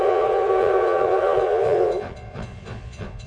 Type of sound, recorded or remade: remade